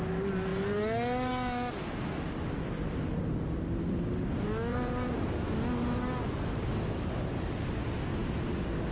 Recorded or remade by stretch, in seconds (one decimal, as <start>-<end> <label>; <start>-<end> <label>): 0.0-4.7 recorded; 4.7-5.2 remade; 5.2-8.9 recorded